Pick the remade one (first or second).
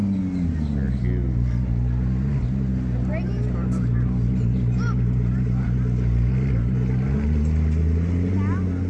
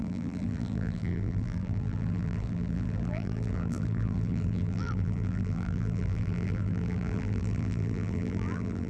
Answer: second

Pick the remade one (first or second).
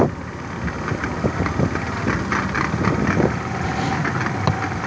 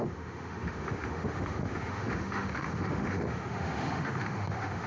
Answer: second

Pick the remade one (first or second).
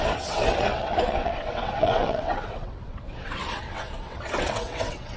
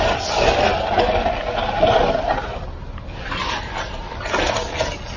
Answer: first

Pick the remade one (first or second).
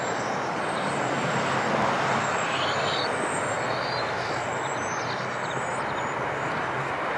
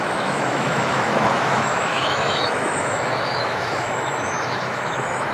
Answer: second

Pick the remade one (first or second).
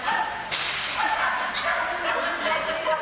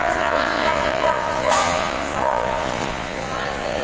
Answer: second